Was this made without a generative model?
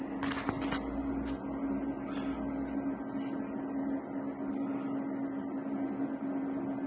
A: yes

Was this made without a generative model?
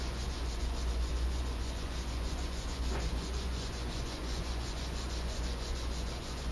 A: no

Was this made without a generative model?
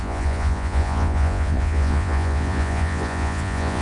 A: no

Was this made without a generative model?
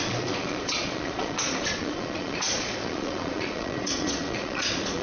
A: no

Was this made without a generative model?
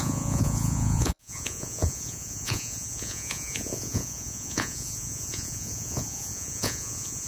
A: no